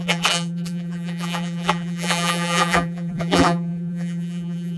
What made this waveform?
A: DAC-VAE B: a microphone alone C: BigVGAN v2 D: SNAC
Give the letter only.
C